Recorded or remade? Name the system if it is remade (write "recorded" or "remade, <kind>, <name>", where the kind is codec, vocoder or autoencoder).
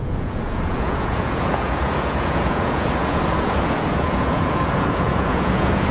remade, vocoder, Vocos